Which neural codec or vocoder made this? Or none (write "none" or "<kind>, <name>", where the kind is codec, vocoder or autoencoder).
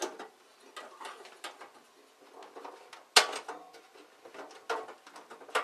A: none